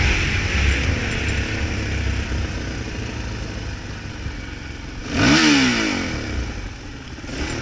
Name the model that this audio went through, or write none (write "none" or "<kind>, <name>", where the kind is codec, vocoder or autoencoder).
none